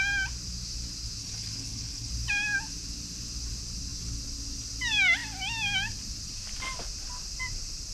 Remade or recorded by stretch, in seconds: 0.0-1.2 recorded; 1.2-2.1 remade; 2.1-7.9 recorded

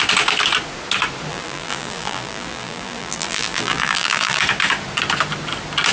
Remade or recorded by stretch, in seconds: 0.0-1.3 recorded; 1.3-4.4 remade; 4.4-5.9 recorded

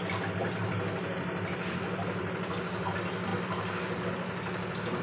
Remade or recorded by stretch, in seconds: 0.0-5.0 recorded

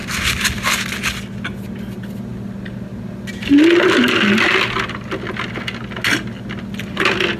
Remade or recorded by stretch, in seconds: 0.0-7.4 recorded

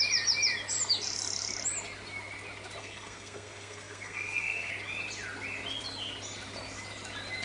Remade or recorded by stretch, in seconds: 0.0-2.8 recorded; 2.8-4.7 remade; 4.7-7.4 recorded

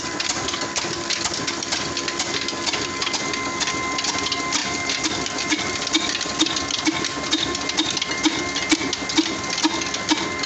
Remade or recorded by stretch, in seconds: 0.0-4.6 recorded; 4.6-5.8 remade; 5.8-10.5 recorded

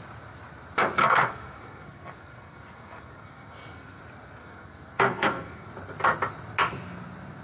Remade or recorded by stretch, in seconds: 0.0-1.0 recorded; 1.0-4.0 remade; 4.0-4.4 recorded; 4.4-5.7 remade; 5.7-7.4 recorded

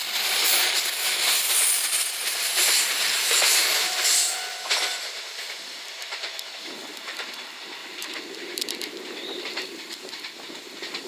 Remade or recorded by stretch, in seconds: 0.0-2.2 recorded; 2.2-4.4 remade; 4.4-7.8 recorded; 7.8-10.3 remade; 10.3-11.1 recorded